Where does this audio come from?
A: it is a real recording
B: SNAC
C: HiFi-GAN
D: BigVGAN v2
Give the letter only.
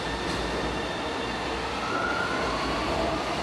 A